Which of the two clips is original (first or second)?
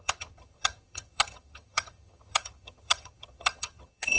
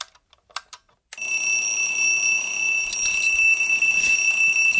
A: second